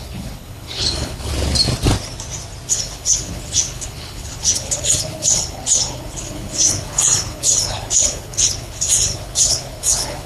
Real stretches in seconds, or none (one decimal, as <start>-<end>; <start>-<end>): 1.3-2.7